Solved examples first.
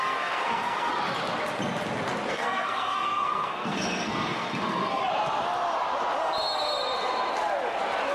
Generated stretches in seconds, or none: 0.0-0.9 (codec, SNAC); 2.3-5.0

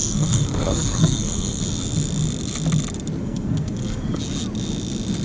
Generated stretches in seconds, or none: 0.0-1.6 (codec, SNAC); 3.2-4.2

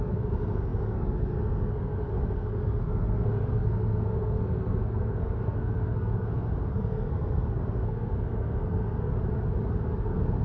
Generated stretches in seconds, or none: 0.0-9.1 (codec, SNAC); 10.0-10.4

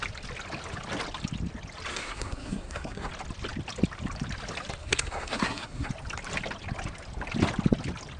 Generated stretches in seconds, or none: 1.9-3.1 (codec, SNAC); 4.8-5.9

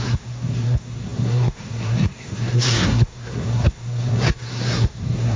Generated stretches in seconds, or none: 0.0-5.4 (codec, SNAC)

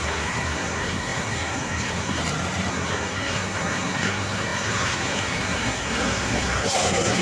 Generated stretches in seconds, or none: 0.0-2.2 (codec, SNAC); 2.7-7.2

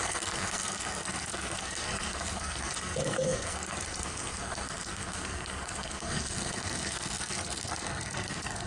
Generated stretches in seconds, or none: 0.0-8.7 (codec, SNAC)